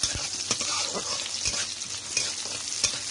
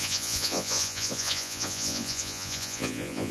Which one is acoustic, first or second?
first